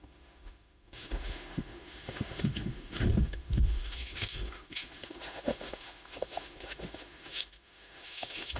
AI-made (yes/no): yes